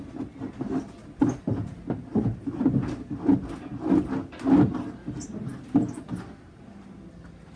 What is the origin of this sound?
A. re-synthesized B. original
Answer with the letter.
B